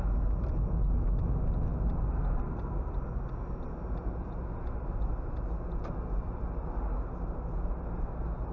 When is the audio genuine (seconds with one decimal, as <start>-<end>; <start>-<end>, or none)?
0.0-8.5